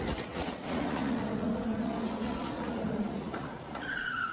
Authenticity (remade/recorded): remade